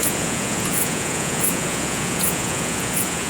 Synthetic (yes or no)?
yes